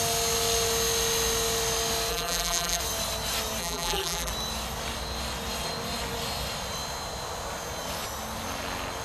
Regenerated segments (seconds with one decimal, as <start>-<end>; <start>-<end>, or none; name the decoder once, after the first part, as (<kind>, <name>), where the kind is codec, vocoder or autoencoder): 2.1-2.8 (vocoder, BigVGAN v2); 3.6-4.3